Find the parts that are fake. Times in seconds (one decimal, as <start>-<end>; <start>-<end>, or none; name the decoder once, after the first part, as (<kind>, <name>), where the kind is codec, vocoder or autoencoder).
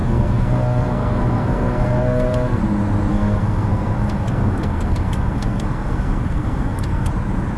0.0-2.6 (codec, SNAC); 3.1-7.1